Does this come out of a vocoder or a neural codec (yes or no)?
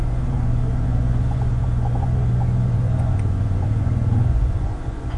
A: yes